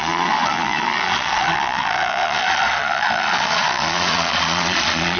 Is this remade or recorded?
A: remade